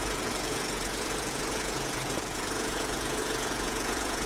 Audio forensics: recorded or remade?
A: remade